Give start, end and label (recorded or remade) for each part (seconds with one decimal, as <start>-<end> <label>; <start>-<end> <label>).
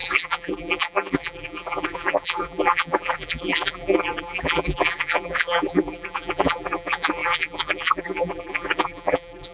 0.0-9.5 remade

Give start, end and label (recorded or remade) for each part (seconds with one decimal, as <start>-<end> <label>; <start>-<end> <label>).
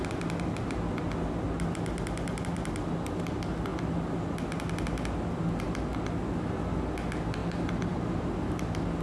0.0-7.4 recorded; 7.4-8.3 remade; 8.3-9.0 recorded